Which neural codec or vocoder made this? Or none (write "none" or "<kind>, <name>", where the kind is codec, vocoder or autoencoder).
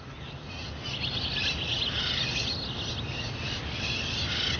none